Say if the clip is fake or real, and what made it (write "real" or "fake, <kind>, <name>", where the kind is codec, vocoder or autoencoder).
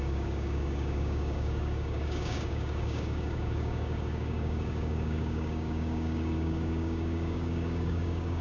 fake, codec, DAC